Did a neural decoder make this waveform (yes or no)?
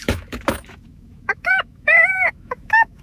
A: yes